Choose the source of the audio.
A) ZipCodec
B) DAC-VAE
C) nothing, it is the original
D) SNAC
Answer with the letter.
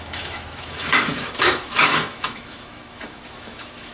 B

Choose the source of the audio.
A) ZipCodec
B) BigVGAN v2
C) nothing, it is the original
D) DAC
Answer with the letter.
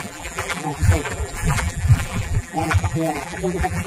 B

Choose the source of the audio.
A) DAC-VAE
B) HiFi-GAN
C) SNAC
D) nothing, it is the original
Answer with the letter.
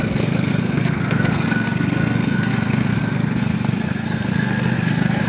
C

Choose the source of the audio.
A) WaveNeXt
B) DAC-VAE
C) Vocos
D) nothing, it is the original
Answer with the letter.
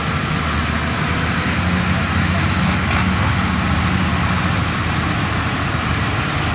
D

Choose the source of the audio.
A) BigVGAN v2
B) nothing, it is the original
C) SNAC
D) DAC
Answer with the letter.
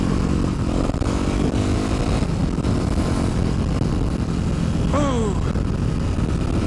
B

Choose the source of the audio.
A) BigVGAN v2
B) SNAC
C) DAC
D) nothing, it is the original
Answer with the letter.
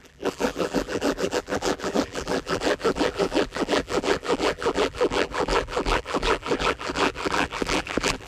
A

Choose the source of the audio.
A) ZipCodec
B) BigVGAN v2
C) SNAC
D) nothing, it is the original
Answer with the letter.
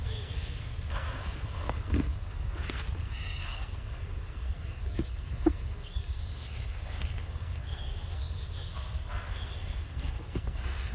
C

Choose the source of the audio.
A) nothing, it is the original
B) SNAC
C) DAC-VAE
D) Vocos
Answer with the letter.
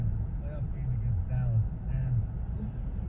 A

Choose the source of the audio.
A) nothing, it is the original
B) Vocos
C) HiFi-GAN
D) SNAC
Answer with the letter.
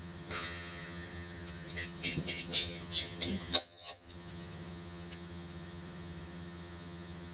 C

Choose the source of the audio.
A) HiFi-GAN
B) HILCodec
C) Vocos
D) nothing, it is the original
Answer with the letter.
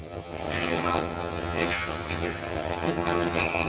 A